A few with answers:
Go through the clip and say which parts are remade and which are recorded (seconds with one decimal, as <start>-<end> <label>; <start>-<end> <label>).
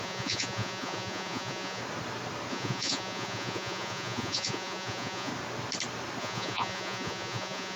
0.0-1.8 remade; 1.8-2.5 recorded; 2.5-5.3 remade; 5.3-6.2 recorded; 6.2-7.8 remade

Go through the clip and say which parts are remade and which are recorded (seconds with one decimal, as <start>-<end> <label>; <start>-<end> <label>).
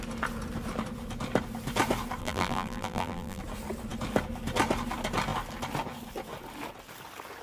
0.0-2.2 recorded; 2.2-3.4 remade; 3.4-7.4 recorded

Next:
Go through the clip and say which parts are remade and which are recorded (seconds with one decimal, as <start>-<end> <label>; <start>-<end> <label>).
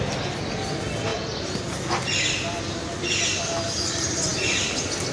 0.0-5.1 recorded